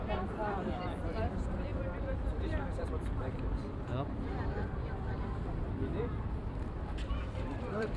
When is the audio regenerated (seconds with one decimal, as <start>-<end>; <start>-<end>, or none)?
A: 0.0-1.7; 2.8-8.0